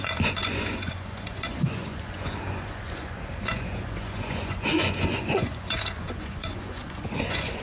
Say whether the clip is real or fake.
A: fake